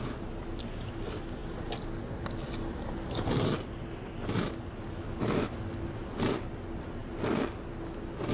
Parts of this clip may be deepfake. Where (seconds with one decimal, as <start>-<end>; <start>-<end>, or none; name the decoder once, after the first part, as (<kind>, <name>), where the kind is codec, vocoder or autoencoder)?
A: none